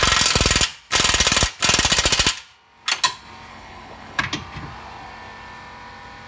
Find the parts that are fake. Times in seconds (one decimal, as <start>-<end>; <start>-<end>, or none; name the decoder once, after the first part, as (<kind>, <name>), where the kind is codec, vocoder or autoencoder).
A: 3.5-4.2 (codec, HILCodec)